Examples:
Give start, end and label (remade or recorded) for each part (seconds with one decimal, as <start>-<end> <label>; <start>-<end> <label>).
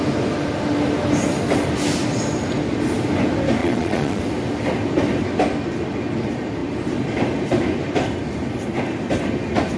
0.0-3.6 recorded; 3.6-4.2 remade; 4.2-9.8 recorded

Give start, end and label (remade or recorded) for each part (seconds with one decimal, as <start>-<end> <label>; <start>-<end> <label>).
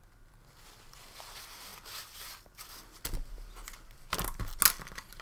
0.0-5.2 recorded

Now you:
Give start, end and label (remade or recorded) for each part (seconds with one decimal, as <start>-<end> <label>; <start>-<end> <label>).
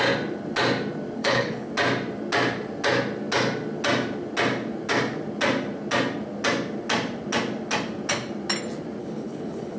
0.0-1.2 recorded; 1.2-1.7 remade; 1.7-9.0 recorded; 9.0-9.8 remade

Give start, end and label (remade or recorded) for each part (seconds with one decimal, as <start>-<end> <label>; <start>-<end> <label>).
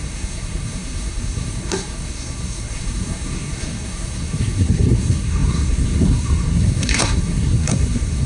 0.0-8.3 remade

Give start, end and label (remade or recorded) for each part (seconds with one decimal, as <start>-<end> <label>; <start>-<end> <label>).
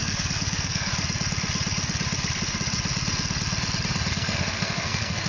0.0-0.9 remade; 0.9-4.1 recorded; 4.1-5.3 remade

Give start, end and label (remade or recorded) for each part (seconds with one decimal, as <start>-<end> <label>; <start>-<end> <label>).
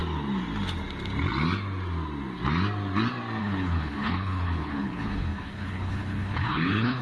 0.0-3.4 recorded; 3.4-7.0 remade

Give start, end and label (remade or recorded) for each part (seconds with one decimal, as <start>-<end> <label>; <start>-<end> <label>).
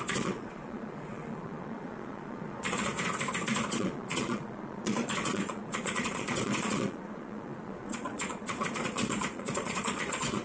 0.0-2.9 remade; 2.9-3.7 recorded; 3.7-10.4 remade